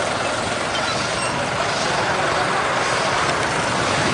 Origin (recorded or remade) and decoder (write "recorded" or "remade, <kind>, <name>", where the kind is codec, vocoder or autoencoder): recorded